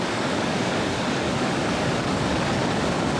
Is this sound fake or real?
fake